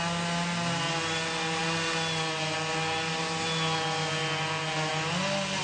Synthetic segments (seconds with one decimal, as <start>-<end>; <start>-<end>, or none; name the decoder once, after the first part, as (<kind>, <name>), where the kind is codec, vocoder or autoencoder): none